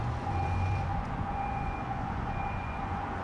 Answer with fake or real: fake